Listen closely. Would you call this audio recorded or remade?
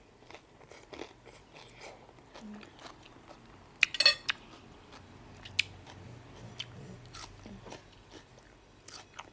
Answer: recorded